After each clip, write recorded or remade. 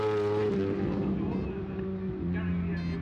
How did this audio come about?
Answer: recorded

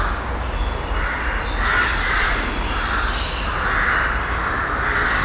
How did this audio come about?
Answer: recorded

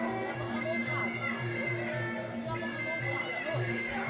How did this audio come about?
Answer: recorded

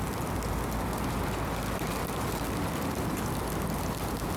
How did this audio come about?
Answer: recorded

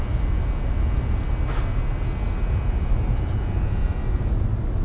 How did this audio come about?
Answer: recorded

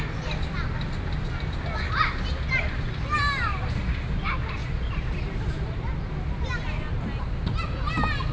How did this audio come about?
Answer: recorded